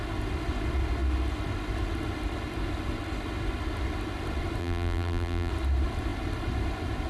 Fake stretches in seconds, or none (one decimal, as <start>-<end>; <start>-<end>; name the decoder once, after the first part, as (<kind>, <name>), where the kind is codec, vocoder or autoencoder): 4.6-5.5 (vocoder, BigVGAN v2)